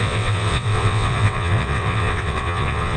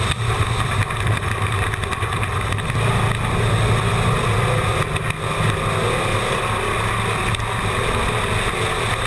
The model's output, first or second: first